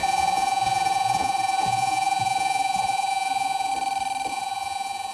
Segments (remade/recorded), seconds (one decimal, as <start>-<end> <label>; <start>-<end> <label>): 0.0-3.7 remade; 3.7-4.3 recorded; 4.3-5.1 remade